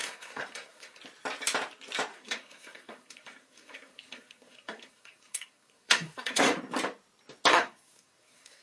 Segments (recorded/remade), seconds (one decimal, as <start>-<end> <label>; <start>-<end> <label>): 0.0-1.0 remade; 1.0-2.1 recorded; 2.1-6.6 remade; 6.6-7.5 recorded; 7.5-8.6 remade